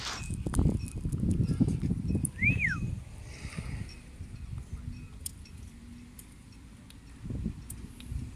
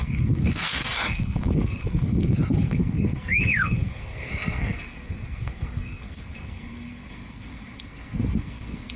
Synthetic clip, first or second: second